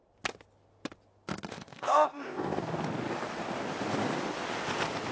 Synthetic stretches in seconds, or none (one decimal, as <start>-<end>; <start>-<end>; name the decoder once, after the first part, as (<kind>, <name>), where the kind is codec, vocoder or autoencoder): 1.5-2.6 (codec, ZipCodec)